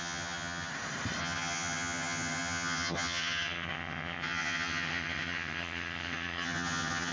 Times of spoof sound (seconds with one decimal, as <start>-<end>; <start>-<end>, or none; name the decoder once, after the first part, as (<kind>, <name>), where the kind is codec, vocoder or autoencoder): 0.0-0.7 (vocoder, HiFi-GAN); 1.2-7.1